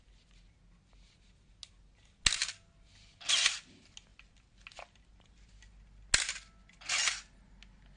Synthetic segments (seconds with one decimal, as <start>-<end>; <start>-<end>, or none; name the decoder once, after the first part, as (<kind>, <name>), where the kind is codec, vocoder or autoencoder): none